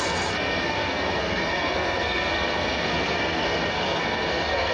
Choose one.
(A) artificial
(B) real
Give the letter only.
A